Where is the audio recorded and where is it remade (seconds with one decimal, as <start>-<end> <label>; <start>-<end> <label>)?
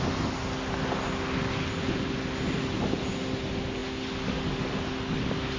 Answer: 0.0-5.6 recorded